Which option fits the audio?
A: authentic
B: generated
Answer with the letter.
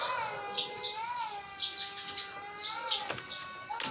A